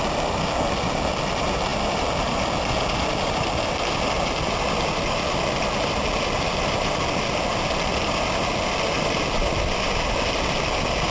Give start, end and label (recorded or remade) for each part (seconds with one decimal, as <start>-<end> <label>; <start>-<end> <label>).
0.0-11.1 recorded

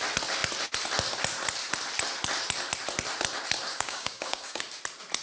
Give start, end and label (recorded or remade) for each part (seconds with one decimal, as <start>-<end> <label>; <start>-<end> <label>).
0.0-3.7 recorded; 3.7-4.6 remade; 4.6-5.2 recorded

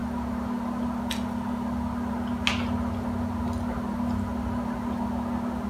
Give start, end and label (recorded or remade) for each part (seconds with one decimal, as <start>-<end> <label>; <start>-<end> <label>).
0.0-5.7 recorded

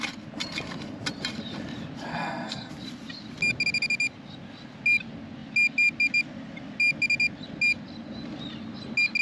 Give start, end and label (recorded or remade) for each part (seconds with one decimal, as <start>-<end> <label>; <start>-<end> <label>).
0.0-2.1 recorded; 2.1-2.7 remade; 2.7-9.2 recorded

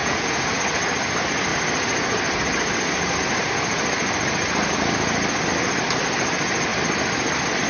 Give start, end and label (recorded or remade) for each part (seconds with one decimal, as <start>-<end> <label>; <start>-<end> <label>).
0.0-0.6 remade; 0.6-7.7 recorded

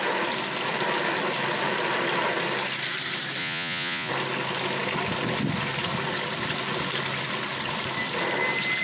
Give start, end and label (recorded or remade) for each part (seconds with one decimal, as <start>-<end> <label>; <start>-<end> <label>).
0.0-3.4 recorded; 3.4-4.1 remade; 4.1-8.8 recorded

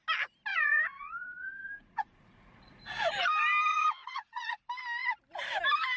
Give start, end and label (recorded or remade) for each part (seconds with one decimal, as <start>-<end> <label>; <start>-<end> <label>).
0.0-0.5 recorded; 0.5-2.8 remade; 2.8-3.7 recorded; 3.7-4.6 remade; 4.6-6.0 recorded